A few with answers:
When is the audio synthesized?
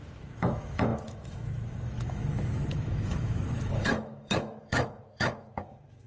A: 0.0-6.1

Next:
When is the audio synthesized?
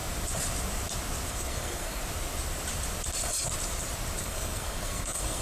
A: 1.3-2.0; 4.2-5.4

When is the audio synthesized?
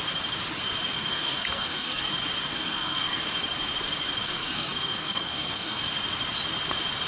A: 0.9-2.1; 2.5-3.2; 4.2-5.8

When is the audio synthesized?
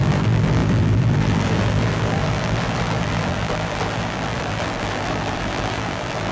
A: 0.0-6.3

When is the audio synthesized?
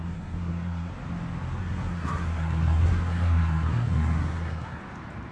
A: 0.0-0.9; 1.6-4.8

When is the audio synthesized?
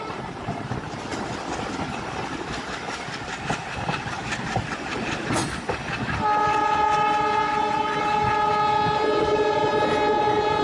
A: 0.0-1.1; 4.1-5.4; 9.2-10.6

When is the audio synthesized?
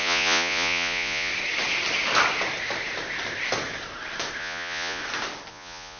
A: 0.0-1.3; 4.4-5.0; 5.5-6.0